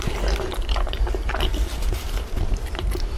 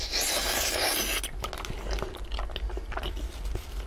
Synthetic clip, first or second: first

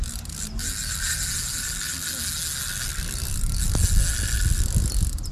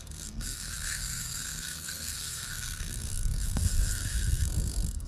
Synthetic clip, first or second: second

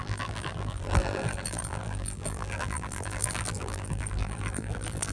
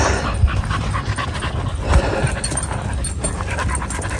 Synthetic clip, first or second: first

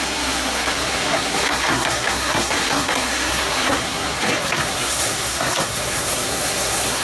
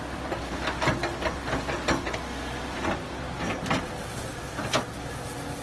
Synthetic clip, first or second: first